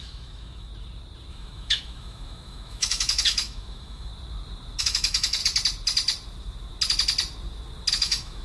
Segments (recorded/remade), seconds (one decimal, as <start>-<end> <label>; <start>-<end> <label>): 0.0-0.7 remade; 0.7-1.3 recorded; 1.3-4.1 remade; 4.1-4.8 recorded; 4.8-5.4 remade; 5.4-7.9 recorded; 7.9-8.4 remade